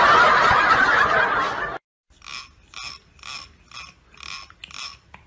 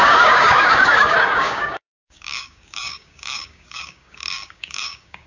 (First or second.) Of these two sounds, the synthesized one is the second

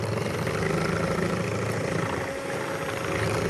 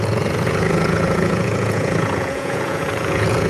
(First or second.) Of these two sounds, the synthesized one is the second